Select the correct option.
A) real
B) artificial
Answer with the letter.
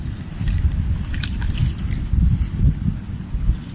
A